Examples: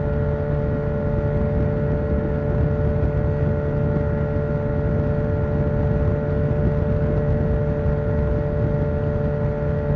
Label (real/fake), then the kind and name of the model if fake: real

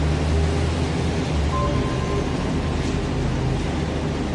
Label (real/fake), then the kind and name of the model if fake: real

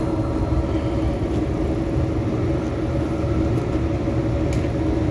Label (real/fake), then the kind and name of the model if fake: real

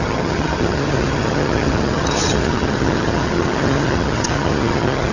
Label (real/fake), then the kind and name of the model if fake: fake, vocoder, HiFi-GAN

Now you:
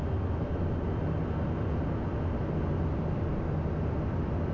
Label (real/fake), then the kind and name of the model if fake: real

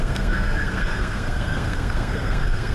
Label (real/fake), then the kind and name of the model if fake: fake, codec, SNAC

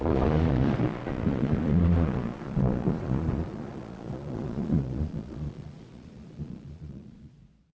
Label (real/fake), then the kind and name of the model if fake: fake, vocoder, Vocos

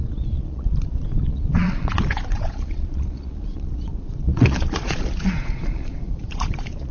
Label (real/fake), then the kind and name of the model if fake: fake, vocoder, Vocos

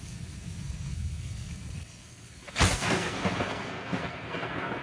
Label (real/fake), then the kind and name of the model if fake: fake, codec, SNAC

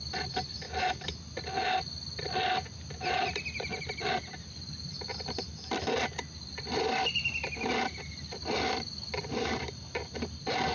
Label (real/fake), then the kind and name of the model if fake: real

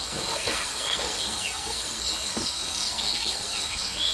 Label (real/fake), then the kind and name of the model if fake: fake, codec, SNAC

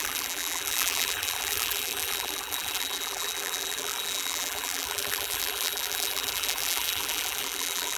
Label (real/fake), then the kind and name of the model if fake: fake, vocoder, BigVGAN v2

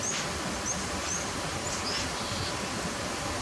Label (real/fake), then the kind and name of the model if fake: real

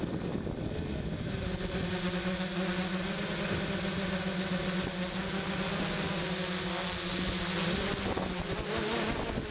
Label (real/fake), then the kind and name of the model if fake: real